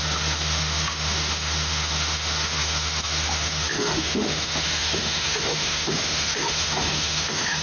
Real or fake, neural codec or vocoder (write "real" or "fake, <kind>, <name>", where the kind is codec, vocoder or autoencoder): fake, autoencoder, DAC-VAE